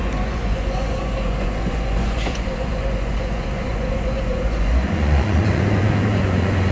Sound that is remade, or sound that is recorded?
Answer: remade